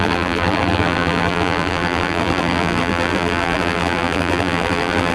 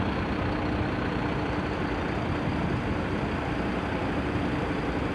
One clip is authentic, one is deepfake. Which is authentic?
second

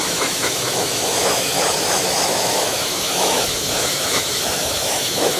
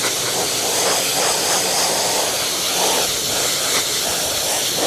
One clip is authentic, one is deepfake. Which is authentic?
second